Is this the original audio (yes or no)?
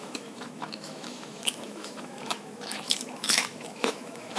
no